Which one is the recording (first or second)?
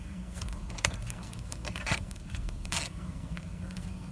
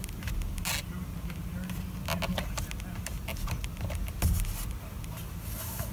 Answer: second